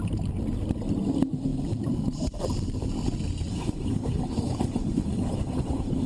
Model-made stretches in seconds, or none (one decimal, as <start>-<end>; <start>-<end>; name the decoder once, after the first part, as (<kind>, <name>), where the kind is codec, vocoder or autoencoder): 3.5-6.1 (codec, HILCodec)